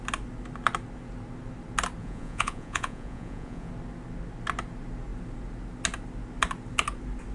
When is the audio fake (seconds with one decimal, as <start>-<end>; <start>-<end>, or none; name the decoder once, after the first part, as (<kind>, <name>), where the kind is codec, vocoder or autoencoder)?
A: 2.0-3.7 (vocoder, Vocos)